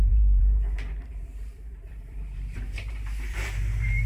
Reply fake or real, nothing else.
fake